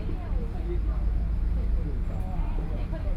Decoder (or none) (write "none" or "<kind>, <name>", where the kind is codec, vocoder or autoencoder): none